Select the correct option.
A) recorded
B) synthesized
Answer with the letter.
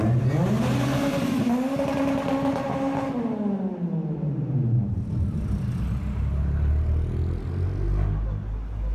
A